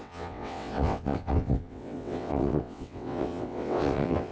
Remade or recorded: remade